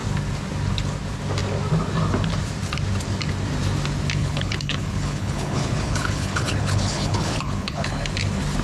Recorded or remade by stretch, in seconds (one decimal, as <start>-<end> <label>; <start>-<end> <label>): 0.0-4.2 recorded; 4.2-8.0 remade; 8.0-8.6 recorded